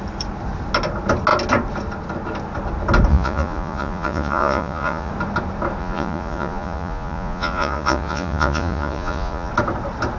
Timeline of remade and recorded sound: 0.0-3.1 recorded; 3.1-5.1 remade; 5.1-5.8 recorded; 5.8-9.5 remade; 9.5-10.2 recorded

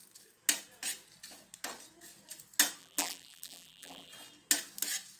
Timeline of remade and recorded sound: 0.0-2.8 recorded; 2.8-4.1 remade; 4.1-5.2 recorded

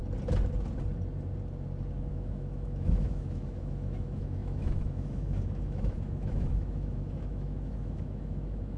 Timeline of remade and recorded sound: 0.0-2.1 recorded; 2.1-8.8 remade

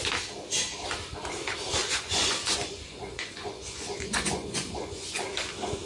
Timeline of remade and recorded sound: 0.0-1.8 recorded; 1.8-5.2 remade; 5.2-5.8 recorded

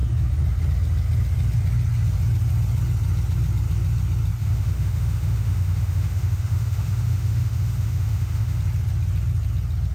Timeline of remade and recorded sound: 0.0-4.4 recorded; 4.4-8.6 remade; 8.6-9.9 recorded

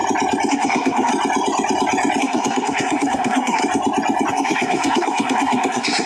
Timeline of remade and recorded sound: 0.0-0.5 recorded; 0.5-1.1 remade; 1.1-2.2 recorded; 2.2-3.6 remade; 3.6-4.3 recorded; 4.3-6.1 remade

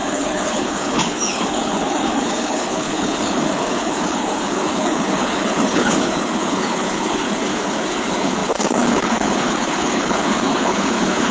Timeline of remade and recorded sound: 0.0-11.3 remade